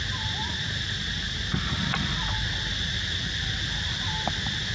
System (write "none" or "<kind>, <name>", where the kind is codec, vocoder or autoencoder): none